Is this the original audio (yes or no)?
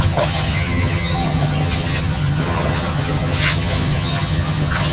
no